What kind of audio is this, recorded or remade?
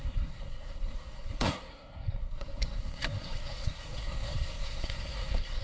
remade